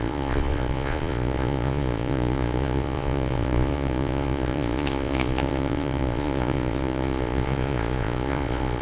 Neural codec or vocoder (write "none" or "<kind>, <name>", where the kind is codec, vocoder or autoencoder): vocoder, Vocos